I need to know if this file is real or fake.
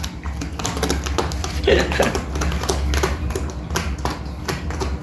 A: real